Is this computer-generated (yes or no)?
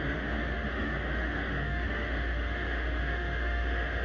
yes